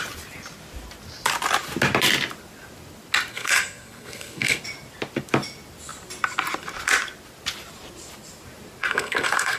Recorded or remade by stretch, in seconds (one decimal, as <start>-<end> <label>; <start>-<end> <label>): 0.0-3.3 recorded; 3.3-4.6 remade; 4.6-8.8 recorded; 8.8-9.6 remade